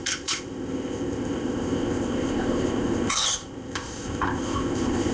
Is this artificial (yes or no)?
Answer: yes